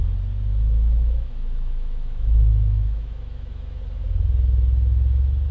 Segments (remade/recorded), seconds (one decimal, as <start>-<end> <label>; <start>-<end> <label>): 0.0-0.5 recorded; 0.5-3.8 remade; 3.8-5.5 recorded